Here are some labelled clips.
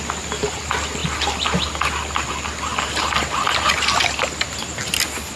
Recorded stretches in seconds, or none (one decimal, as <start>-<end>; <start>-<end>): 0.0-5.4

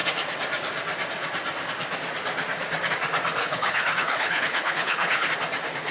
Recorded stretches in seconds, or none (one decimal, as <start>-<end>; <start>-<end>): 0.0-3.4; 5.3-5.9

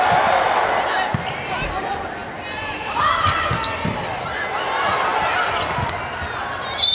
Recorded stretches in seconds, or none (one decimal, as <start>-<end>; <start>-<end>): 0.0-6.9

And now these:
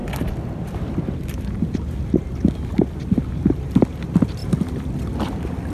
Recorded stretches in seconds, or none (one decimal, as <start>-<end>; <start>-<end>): 0.0-5.7

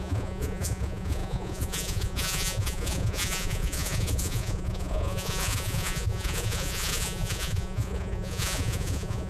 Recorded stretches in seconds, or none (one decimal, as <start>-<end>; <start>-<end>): none